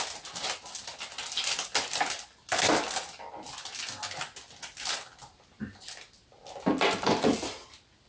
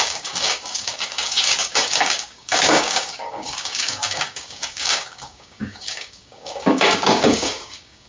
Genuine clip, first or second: first